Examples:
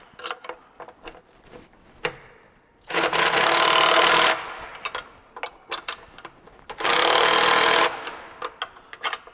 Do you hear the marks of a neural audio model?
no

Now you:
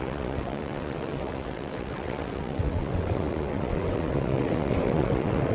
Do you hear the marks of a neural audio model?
yes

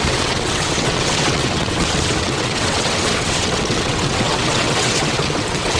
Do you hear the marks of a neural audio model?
yes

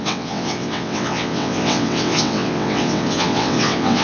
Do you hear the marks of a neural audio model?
yes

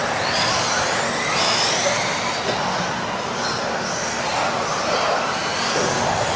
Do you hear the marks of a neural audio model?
no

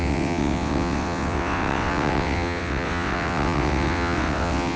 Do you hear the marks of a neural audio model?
yes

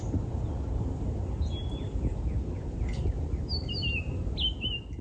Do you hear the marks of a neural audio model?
no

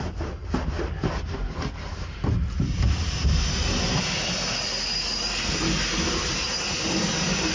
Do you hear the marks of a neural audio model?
no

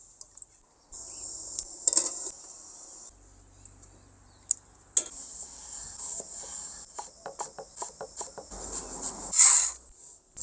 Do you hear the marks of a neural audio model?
no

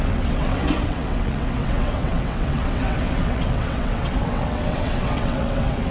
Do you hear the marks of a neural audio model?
yes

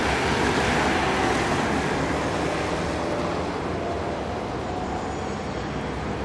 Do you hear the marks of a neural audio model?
no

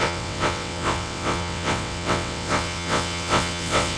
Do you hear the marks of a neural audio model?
yes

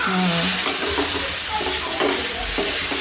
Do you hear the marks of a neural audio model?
no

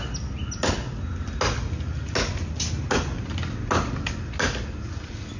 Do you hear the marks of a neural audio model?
no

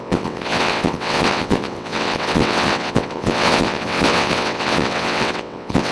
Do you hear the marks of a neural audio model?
yes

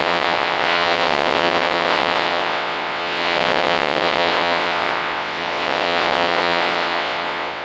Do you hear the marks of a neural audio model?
yes